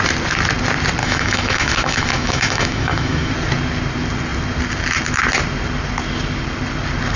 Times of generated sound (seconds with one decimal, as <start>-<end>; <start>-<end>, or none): 1.0-3.3